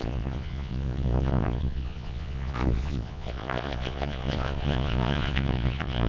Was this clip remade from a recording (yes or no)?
yes